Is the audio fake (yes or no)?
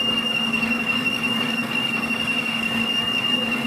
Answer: yes